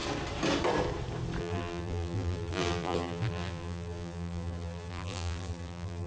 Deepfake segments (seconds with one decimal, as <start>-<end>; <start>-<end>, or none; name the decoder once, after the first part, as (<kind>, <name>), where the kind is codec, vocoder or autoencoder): 1.4-6.1 (vocoder, BigVGAN v2)

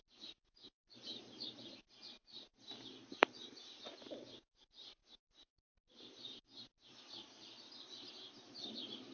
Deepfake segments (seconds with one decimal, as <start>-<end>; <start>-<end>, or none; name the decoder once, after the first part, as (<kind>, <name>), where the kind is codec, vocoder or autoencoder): 0.0-9.1 (vocoder, BigVGAN v2)

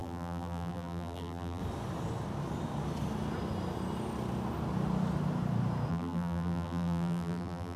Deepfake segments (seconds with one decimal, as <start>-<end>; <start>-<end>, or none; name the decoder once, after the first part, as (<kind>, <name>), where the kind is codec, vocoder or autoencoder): 0.0-1.6 (vocoder, BigVGAN v2); 5.9-7.8

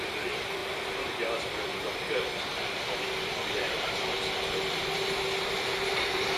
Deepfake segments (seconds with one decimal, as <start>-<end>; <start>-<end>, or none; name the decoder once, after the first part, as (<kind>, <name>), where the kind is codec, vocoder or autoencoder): none

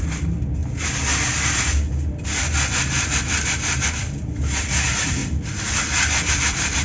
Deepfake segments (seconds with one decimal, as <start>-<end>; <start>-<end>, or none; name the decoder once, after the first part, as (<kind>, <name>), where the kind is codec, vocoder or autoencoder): 0.0-0.6 (vocoder, BigVGAN v2); 4.7-5.2; 6.3-6.8